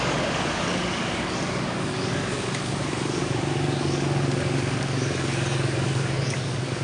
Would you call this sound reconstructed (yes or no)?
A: yes